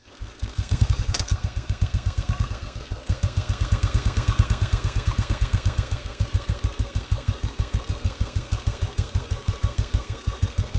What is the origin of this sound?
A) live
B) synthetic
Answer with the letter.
B